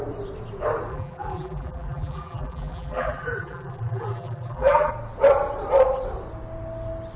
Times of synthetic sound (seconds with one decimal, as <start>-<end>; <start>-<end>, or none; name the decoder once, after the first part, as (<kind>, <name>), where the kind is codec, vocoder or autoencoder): 0.9-4.9 (vocoder, BigVGAN v2)